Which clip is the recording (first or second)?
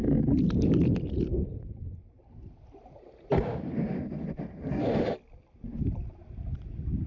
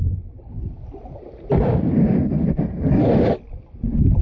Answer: first